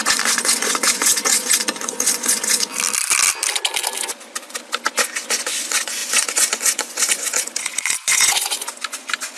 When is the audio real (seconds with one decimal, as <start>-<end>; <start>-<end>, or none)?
2.7-4.9